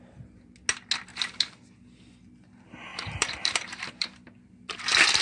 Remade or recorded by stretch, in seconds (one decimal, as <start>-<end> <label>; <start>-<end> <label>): 0.0-1.1 recorded; 1.1-1.6 remade; 1.6-2.9 recorded; 2.9-4.3 remade; 4.3-5.2 recorded